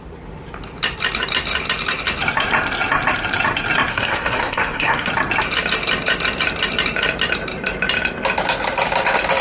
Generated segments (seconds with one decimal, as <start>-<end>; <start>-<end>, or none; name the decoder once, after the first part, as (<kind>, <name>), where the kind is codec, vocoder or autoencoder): 3.9-5.1 (codec, SNAC)